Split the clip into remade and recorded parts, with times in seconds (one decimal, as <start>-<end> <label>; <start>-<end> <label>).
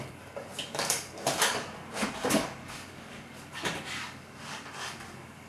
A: 0.0-5.5 remade